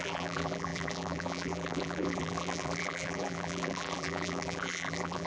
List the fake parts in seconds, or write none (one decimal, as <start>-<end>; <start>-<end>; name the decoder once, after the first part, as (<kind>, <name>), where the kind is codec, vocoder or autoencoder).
0.0-5.3 (vocoder, BigVGAN v2)